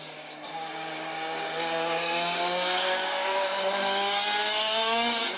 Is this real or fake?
fake